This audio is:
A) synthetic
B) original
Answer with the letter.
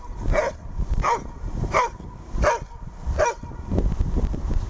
B